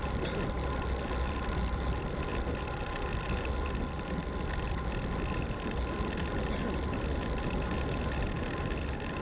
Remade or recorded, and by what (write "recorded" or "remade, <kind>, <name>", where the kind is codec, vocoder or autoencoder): recorded